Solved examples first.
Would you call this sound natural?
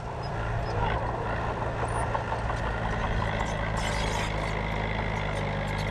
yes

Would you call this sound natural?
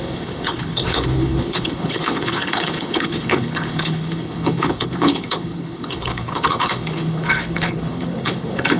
no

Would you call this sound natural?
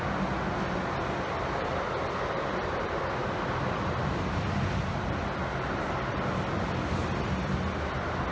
yes